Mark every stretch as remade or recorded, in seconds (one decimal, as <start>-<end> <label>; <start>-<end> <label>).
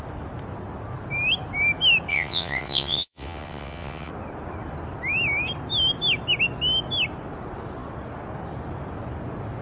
0.0-2.1 recorded; 2.1-4.1 remade; 4.1-9.6 recorded